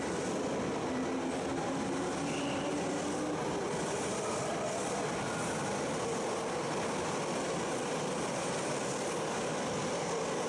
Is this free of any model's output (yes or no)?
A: yes